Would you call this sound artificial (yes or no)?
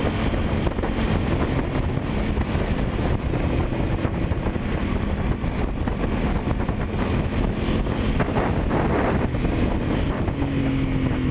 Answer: no